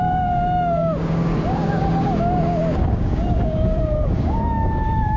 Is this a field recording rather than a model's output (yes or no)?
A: no